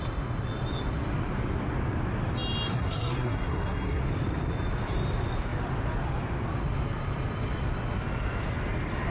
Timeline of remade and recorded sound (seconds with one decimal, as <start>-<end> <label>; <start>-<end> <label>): 0.0-2.7 recorded; 2.7-4.0 remade; 4.0-9.1 recorded